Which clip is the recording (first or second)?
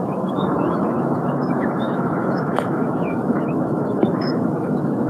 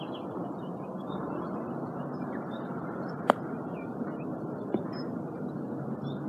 second